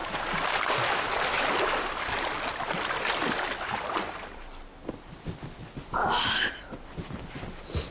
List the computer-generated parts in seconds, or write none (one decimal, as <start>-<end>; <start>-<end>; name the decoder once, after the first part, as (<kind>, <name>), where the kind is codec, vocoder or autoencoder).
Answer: none